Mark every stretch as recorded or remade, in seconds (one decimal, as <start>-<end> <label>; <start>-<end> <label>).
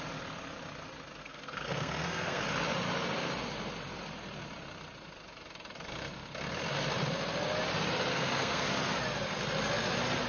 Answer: 0.0-1.2 recorded; 1.2-2.4 remade; 2.4-8.1 recorded; 8.1-8.7 remade; 8.7-10.3 recorded